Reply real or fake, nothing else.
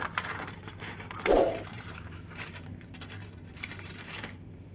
fake